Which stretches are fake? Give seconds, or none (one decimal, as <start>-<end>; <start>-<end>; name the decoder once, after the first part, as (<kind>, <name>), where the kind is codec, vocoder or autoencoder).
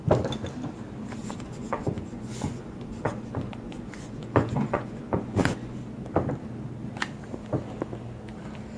1.2-5.8 (vocoder, Vocos)